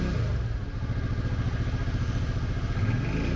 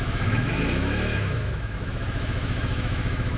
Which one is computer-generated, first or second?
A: second